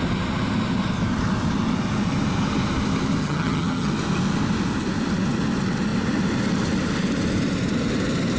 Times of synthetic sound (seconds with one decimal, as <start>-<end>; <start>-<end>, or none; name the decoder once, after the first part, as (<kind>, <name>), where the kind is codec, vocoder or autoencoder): 3.2-3.9 (vocoder, HiFi-GAN)